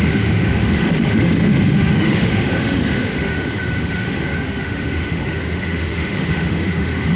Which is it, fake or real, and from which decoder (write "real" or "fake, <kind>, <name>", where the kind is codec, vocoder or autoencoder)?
fake, autoencoder, DAC-VAE